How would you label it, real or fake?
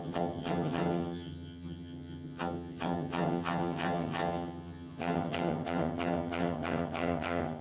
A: fake